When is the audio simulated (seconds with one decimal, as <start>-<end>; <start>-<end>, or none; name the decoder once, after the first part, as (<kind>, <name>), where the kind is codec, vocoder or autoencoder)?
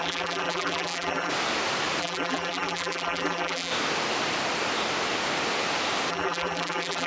0.0-1.3 (vocoder, BigVGAN v2); 2.0-3.7; 6.1-7.1